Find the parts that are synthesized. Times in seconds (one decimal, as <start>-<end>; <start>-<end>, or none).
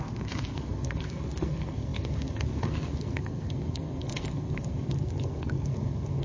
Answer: 0.0-6.2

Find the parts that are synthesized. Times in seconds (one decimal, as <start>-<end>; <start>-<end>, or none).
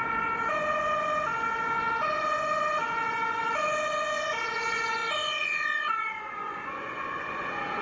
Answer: 0.0-7.8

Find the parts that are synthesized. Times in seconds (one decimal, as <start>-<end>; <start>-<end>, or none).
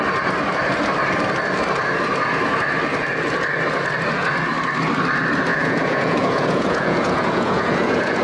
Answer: 5.5-8.2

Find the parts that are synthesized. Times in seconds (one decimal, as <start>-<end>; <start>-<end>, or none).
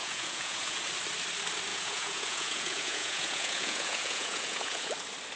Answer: 0.0-0.9; 1.7-4.9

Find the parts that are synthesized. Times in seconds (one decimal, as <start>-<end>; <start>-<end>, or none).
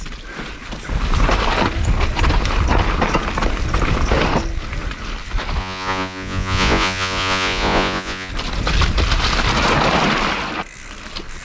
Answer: 5.6-8.3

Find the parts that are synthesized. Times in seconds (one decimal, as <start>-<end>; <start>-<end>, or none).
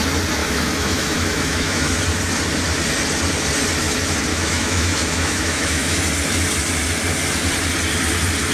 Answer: 0.4-2.0; 4.3-6.0